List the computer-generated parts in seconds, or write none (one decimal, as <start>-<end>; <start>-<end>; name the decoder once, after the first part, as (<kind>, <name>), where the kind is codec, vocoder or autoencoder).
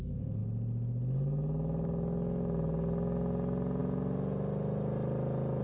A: none